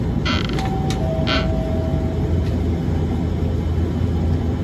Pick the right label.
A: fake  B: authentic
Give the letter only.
B